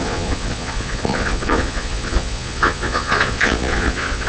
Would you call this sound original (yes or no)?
no